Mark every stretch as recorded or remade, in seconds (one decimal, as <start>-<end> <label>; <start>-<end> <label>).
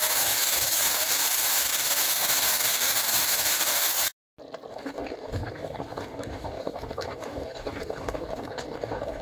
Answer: 0.0-4.0 remade; 4.0-4.7 recorded; 4.7-9.2 remade